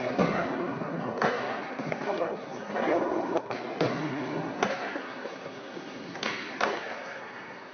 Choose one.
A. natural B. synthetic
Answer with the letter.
B